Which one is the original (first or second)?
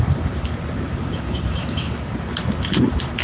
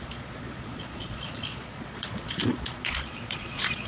first